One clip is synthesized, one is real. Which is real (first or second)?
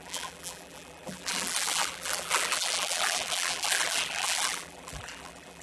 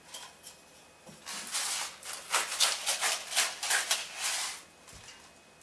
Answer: second